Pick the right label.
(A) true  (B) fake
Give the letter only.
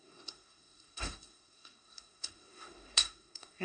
B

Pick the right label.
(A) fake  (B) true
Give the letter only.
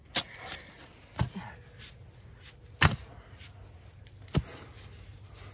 B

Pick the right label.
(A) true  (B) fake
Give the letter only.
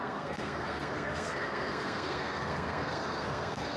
B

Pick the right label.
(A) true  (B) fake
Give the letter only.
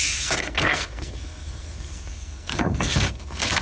B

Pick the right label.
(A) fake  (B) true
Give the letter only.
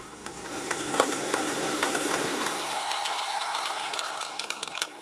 A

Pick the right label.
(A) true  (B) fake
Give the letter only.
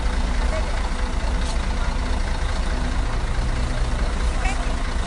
A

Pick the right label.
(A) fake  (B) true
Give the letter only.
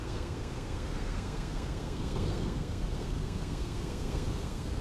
A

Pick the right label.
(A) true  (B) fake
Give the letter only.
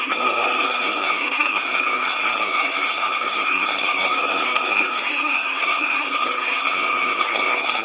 B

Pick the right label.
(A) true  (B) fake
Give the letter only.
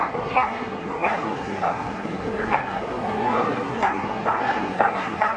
B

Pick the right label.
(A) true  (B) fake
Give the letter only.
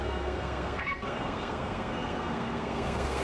B